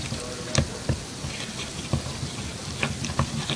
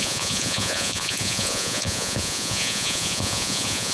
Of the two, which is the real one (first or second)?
first